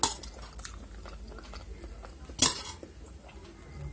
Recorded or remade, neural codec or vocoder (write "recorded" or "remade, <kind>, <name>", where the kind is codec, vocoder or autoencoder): recorded